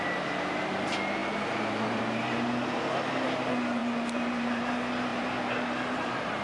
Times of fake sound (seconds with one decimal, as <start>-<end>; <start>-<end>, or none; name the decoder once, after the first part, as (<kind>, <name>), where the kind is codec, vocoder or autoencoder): 1.2-2.0 (vocoder, BigVGAN v2); 3.8-4.6; 5.1-6.4